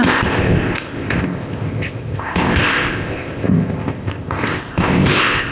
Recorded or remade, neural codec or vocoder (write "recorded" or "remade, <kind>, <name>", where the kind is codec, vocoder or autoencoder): remade, codec, ZipCodec